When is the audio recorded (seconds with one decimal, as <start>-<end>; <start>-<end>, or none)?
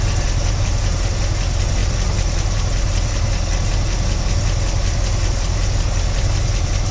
0.0-6.9